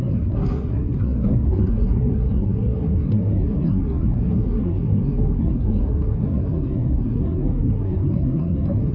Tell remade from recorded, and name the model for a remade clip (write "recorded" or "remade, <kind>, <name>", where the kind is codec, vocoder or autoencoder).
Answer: remade, codec, SNAC